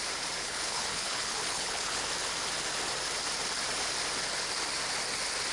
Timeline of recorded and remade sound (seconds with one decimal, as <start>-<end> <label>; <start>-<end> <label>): 0.0-0.4 recorded; 0.4-2.1 remade; 2.1-5.5 recorded